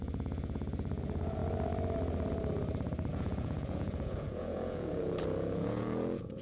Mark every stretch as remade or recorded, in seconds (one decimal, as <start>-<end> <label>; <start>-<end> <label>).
0.0-1.4 remade; 1.4-3.1 recorded; 3.1-6.4 remade